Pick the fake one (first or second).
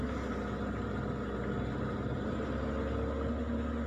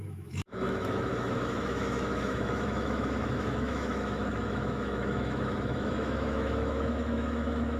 second